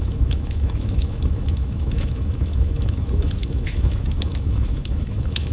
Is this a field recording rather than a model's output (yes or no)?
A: no